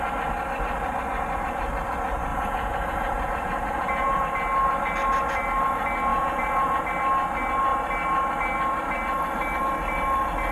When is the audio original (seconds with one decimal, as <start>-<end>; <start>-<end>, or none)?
0.0-2.3; 4.2-6.1; 6.8-10.5